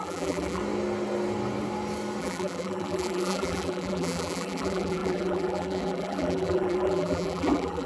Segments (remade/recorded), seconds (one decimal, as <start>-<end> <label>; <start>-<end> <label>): 0.0-0.6 remade; 0.6-2.2 recorded; 2.2-7.9 remade